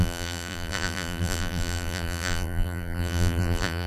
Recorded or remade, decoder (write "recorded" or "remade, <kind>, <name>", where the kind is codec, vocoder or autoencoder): remade, vocoder, BigVGAN v2